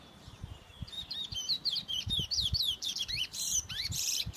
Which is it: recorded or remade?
remade